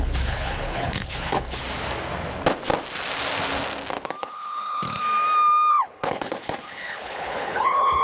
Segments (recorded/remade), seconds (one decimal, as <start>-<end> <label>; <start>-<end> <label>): 0.0-1.6 remade; 1.6-4.2 recorded; 4.2-5.0 remade; 5.0-5.7 recorded; 5.7-8.0 remade